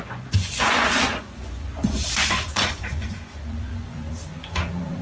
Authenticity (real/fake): fake